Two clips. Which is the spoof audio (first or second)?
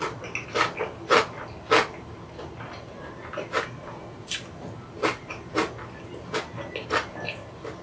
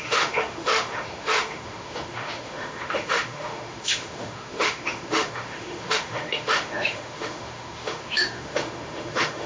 second